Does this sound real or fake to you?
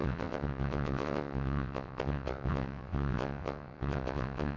fake